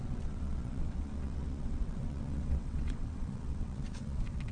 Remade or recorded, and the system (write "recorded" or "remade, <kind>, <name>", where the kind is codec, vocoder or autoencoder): remade, vocoder, WaveNeXt